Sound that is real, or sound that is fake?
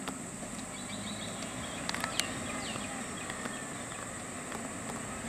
real